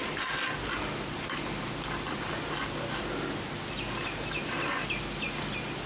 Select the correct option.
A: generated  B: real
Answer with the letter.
B